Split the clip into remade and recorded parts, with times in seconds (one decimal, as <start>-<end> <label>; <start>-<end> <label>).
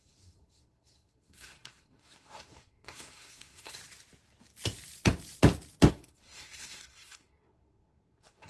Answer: 0.0-3.8 remade; 3.8-5.9 recorded; 5.9-8.5 remade